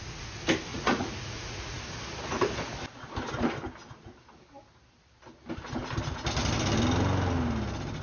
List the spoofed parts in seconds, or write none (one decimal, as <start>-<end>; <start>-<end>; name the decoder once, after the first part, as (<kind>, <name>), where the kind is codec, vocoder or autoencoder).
0.7-1.8 (vocoder, Vocos)